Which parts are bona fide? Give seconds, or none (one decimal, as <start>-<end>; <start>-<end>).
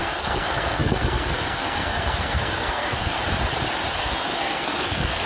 3.2-4.0